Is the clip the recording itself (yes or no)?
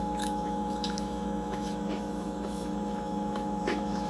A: no